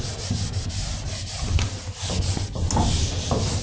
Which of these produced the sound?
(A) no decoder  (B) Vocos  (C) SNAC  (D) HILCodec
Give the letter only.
A